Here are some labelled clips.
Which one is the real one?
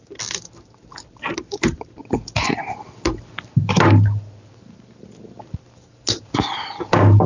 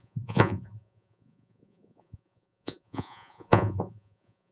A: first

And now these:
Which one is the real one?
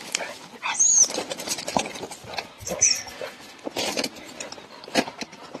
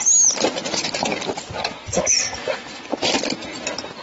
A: second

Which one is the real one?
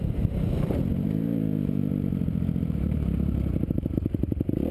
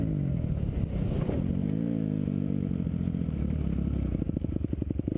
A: second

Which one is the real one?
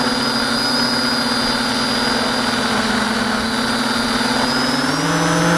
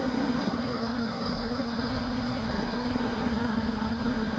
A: first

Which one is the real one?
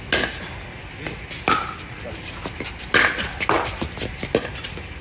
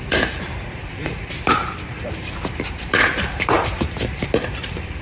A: first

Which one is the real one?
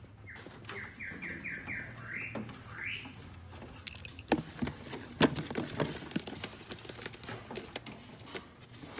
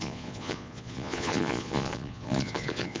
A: first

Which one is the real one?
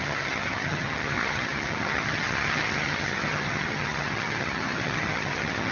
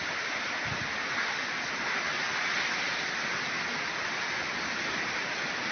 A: second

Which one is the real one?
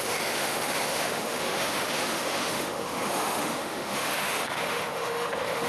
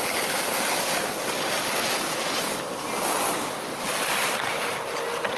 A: second